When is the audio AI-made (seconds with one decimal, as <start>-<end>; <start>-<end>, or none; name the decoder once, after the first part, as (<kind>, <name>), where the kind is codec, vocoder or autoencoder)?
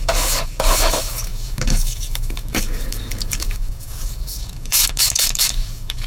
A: 0.0-6.1 (codec, DAC)